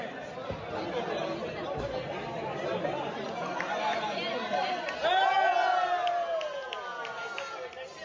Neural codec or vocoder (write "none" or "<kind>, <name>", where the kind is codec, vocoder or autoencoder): none